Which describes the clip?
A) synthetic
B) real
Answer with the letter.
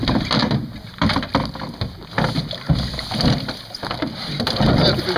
B